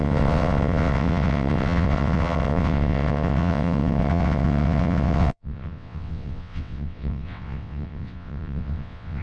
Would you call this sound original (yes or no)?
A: no